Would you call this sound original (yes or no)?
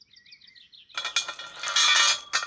yes